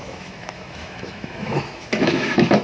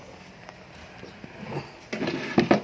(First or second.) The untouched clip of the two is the second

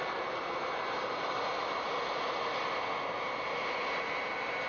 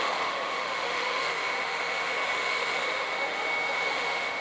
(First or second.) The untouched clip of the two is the first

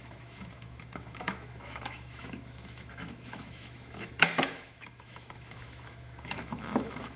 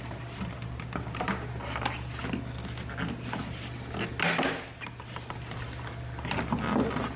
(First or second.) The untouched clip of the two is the second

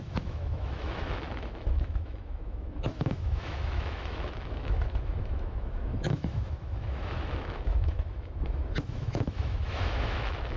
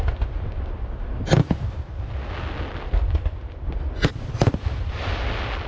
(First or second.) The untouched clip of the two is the second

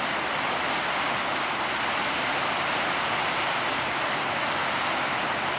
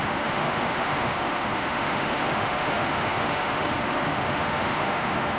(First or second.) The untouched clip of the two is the first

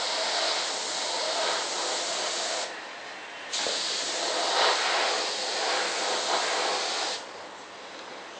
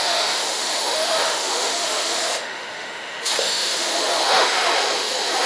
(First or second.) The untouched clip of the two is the first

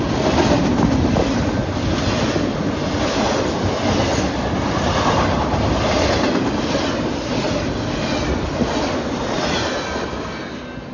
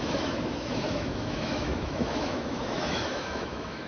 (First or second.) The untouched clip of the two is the first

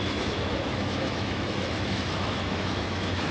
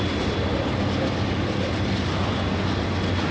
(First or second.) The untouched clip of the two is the second